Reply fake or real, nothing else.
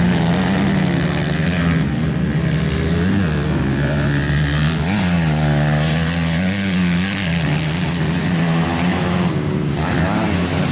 real